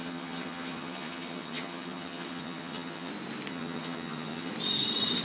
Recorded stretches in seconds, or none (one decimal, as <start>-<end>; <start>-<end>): 3.1-3.5; 4.5-5.2

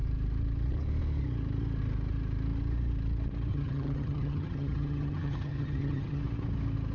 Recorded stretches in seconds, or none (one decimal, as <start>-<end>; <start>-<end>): 0.0-3.5; 6.2-6.9

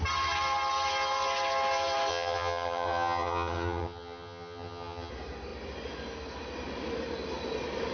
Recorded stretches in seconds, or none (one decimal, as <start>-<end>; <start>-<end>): 0.0-2.1; 5.1-7.9